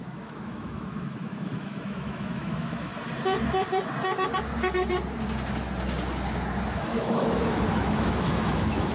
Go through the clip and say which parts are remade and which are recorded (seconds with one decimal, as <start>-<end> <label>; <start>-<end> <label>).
0.0-2.9 remade; 2.9-6.7 recorded; 6.7-8.9 remade